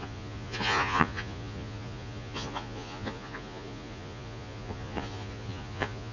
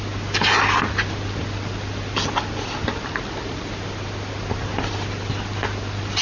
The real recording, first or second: second